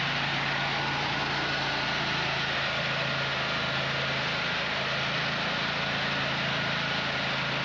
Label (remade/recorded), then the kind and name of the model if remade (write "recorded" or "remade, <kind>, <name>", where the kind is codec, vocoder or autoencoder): recorded